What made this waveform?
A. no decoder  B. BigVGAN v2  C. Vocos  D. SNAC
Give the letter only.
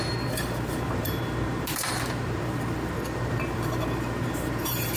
B